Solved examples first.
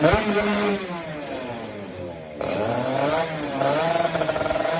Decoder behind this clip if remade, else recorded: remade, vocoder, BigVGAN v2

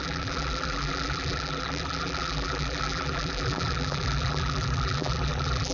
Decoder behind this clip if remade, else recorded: remade, vocoder, BigVGAN v2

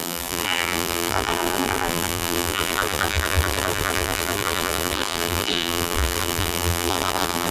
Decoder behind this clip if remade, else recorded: remade, vocoder, BigVGAN v2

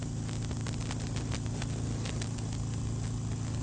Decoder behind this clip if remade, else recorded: recorded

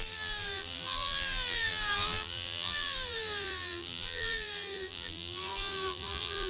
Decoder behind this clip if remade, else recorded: remade, vocoder, BigVGAN v2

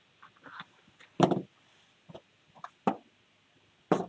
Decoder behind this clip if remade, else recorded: recorded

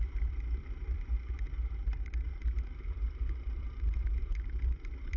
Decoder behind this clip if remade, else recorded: remade, vocoder, BigVGAN v2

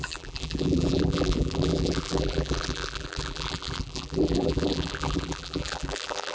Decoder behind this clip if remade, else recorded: remade, vocoder, BigVGAN v2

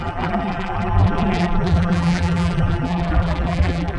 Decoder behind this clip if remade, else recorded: remade, vocoder, BigVGAN v2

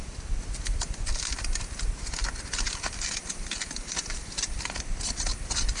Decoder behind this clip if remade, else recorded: recorded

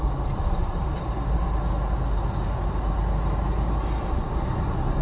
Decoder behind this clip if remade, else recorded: recorded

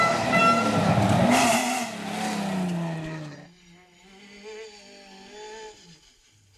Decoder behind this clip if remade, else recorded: recorded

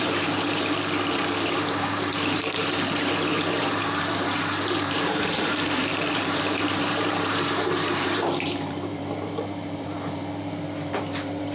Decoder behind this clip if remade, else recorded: remade, vocoder, BigVGAN v2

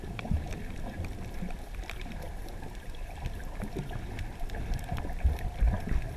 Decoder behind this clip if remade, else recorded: recorded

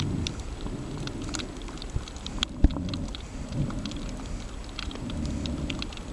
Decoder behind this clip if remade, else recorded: recorded